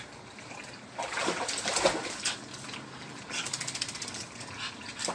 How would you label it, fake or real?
real